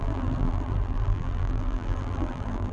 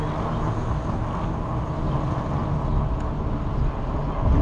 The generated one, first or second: first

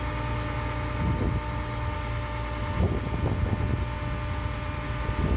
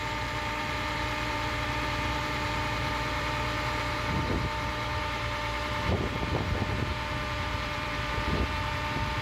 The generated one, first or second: second